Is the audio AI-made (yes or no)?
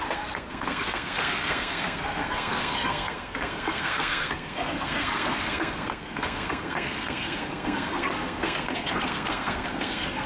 yes